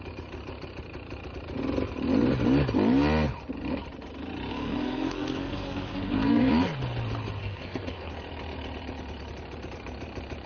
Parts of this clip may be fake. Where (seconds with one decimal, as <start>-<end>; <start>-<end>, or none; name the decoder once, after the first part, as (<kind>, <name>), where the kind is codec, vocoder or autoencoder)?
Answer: 4.5-6.5 (codec, SNAC); 7.4-8.1

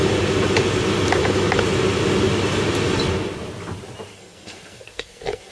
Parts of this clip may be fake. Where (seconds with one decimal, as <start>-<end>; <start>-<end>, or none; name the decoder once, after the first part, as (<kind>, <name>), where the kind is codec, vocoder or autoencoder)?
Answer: 4.1-5.5 (codec, SNAC)

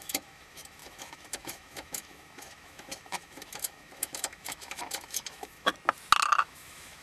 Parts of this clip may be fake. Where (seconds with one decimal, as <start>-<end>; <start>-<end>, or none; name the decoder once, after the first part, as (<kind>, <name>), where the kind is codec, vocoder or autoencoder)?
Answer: 0.0-5.7 (autoencoder, DAC-VAE); 6.4-7.0

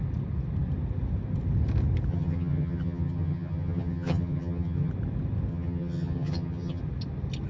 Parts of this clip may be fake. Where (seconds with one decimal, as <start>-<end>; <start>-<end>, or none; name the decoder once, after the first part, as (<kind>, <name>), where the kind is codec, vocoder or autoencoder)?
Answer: 2.1-4.9 (vocoder, HiFi-GAN); 5.5-6.8